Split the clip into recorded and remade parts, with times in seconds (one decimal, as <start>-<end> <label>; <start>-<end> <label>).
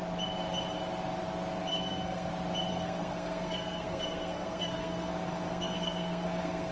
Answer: 0.0-1.7 recorded; 1.7-2.3 remade; 2.3-2.7 recorded; 2.7-6.7 remade